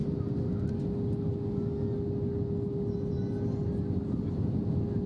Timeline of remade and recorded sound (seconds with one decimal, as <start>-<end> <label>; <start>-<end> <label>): 0.0-5.1 recorded